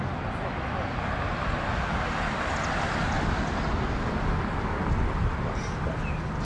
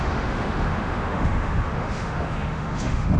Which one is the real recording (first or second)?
first